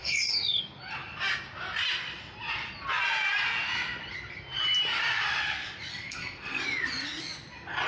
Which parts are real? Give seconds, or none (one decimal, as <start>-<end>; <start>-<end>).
0.6-5.9; 6.6-7.9